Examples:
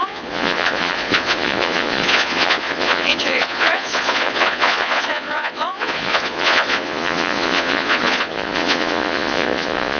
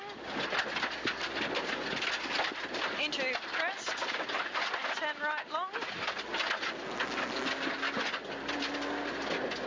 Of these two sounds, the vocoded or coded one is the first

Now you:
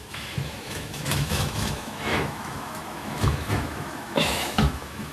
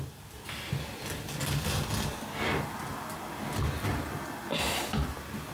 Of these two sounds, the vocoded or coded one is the first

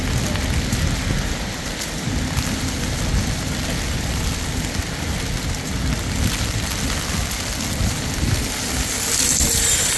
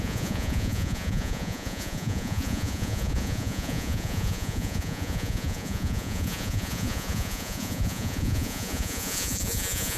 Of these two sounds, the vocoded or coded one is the second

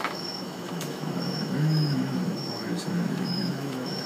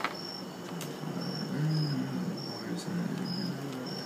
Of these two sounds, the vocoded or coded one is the first